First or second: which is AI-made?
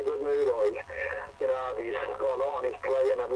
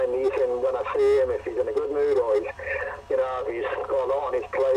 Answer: first